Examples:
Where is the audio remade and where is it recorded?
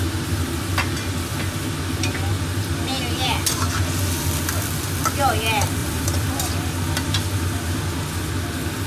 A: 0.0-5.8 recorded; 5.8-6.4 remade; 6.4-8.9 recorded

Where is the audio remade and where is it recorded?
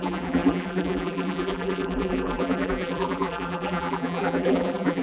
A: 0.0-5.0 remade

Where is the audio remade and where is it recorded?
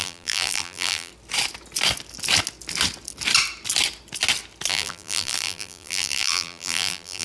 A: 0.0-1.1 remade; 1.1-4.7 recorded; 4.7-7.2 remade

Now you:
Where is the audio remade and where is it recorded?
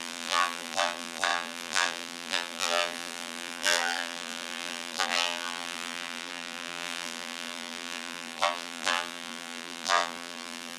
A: 0.0-10.8 remade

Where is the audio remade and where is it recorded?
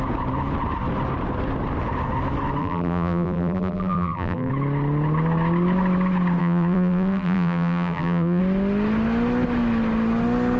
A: 0.0-2.6 recorded; 2.6-4.5 remade; 4.5-6.4 recorded; 6.4-8.4 remade; 8.4-10.6 recorded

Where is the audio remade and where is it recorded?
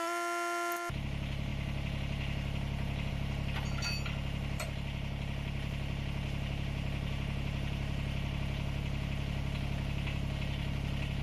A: 0.0-11.2 recorded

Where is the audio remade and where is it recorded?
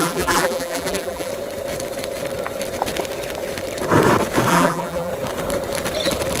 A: 0.0-1.3 remade; 1.3-4.5 recorded; 4.5-5.1 remade; 5.1-6.4 recorded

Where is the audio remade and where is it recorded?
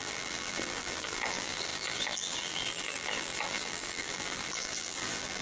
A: 0.0-5.4 remade